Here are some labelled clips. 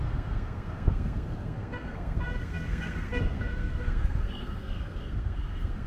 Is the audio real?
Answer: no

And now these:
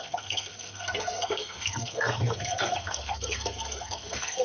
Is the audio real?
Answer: no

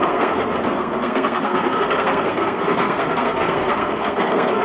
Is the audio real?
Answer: no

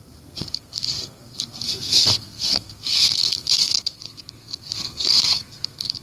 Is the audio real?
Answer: no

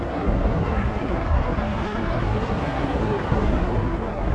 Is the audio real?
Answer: no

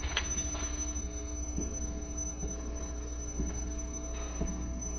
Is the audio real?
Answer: no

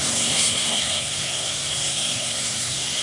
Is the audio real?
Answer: no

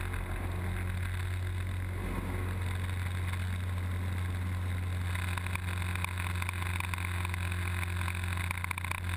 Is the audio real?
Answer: yes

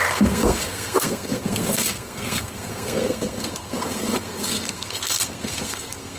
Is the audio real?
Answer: no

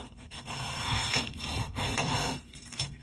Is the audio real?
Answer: no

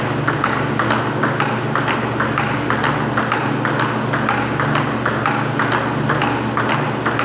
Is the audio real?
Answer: yes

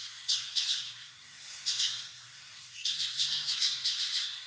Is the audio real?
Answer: no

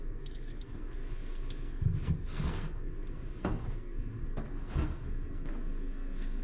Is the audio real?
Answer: no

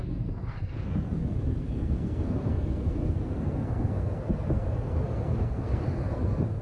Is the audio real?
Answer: no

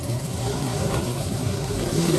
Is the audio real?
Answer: no